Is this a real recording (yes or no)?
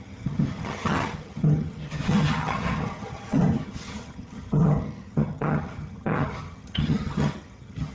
no